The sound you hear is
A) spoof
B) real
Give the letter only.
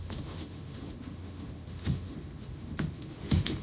A